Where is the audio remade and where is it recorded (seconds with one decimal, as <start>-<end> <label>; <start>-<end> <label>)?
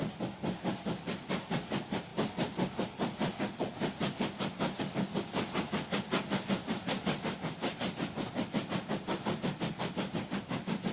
0.0-10.9 recorded